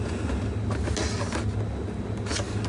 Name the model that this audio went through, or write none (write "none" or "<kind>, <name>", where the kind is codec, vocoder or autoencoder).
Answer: none